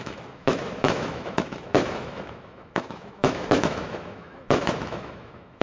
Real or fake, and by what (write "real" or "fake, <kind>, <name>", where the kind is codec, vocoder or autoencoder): fake, autoencoder, DAC-VAE